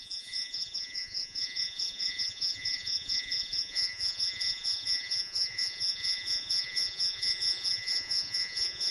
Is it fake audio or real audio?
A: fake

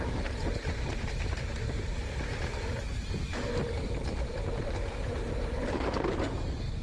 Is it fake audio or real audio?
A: fake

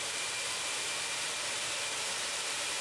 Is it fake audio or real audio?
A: fake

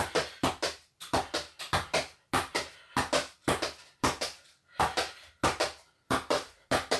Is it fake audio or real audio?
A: real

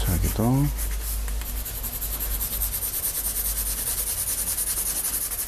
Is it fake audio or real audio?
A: real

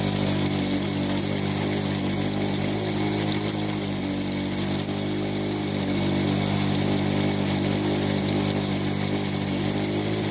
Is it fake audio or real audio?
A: real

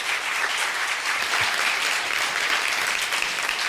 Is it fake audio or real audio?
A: real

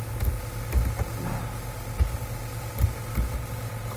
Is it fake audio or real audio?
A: real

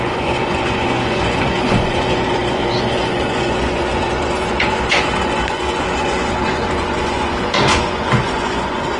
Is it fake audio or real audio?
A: fake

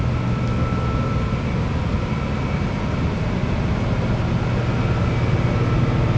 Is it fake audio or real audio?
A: real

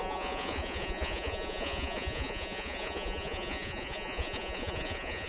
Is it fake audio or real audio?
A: fake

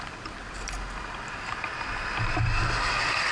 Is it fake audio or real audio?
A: real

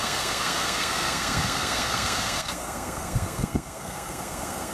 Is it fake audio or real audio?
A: fake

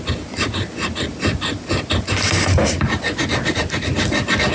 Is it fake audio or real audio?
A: real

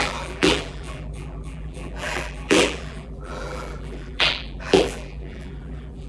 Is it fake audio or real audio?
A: fake